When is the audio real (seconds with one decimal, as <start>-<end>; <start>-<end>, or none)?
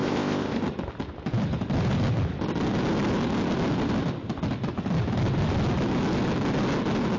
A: 0.6-7.2